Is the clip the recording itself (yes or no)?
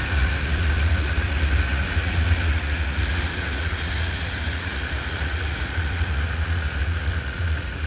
no